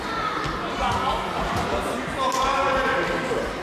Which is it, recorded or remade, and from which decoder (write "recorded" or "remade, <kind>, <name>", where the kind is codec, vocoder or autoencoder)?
recorded